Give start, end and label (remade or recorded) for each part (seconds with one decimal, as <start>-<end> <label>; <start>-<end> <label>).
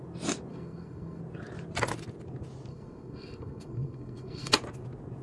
0.0-0.5 recorded; 0.5-1.2 remade; 1.2-2.7 recorded; 2.7-4.5 remade; 4.5-5.2 recorded